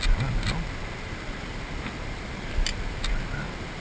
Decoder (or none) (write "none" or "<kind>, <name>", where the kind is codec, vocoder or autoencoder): none